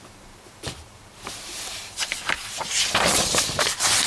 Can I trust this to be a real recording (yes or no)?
no